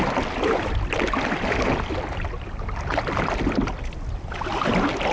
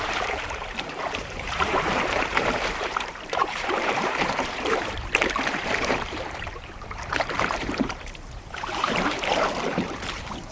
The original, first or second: first